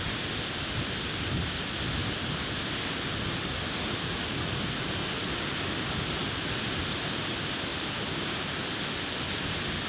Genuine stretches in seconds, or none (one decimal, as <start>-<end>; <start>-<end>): 0.0-2.0; 2.6-7.7; 9.0-9.9